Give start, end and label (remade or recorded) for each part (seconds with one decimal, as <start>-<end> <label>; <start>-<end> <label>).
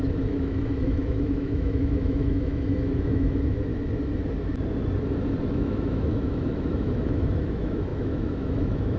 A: 0.0-3.7 remade; 3.7-5.5 recorded; 5.5-9.0 remade